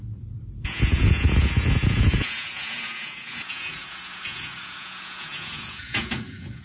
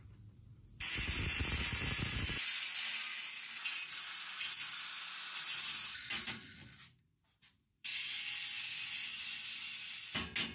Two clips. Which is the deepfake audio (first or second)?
first